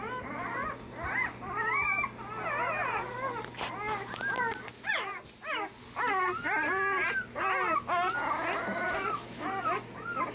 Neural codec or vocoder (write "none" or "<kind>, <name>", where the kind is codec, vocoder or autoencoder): none